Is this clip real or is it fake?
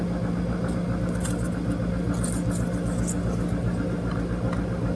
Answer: real